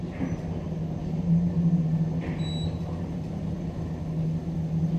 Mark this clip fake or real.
real